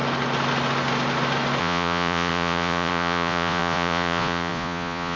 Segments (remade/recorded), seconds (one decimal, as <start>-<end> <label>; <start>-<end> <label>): 0.0-1.6 recorded; 1.6-5.2 remade